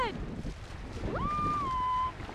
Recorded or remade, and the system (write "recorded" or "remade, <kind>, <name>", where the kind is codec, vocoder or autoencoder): recorded